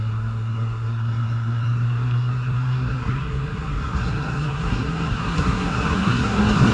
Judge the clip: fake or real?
fake